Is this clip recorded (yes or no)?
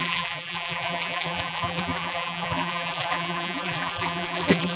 no